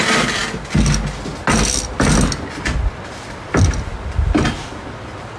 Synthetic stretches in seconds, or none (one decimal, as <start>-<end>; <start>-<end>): none